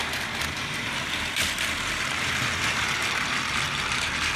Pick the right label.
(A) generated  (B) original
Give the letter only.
A